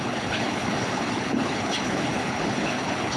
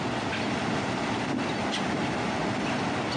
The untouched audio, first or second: second